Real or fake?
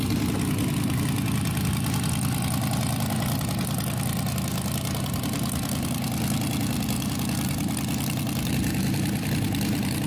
real